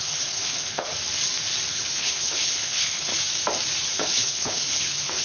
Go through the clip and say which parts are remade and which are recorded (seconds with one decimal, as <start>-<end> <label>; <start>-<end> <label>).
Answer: 0.0-0.9 remade; 0.9-1.7 recorded; 1.7-3.1 remade; 3.1-3.9 recorded; 3.9-5.2 remade